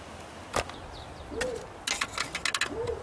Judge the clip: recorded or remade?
recorded